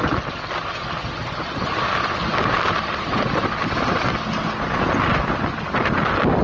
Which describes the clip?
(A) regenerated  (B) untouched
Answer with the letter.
B